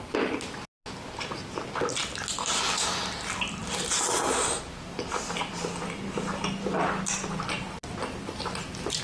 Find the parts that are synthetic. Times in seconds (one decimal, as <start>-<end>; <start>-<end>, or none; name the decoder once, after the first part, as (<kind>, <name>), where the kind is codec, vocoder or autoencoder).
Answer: none